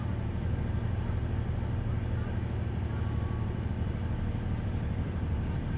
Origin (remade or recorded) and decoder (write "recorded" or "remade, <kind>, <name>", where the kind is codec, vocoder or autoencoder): recorded